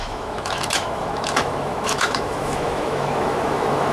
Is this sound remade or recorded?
remade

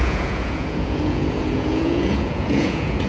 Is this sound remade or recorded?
remade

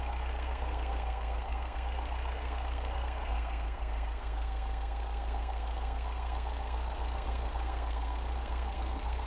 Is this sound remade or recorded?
remade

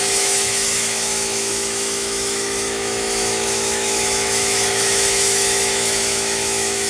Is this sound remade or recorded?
remade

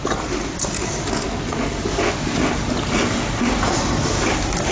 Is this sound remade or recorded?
recorded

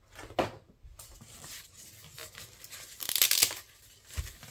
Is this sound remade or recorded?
recorded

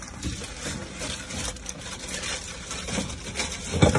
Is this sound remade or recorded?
recorded